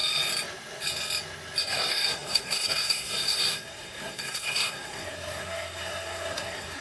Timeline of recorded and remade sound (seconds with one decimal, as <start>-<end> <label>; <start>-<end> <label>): 0.0-1.6 recorded; 1.6-6.8 remade